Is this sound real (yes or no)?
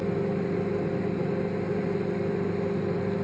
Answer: yes